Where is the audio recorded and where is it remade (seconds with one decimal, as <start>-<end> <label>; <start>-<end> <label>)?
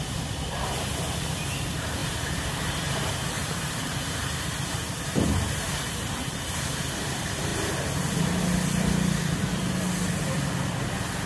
0.0-7.5 remade; 7.5-11.3 recorded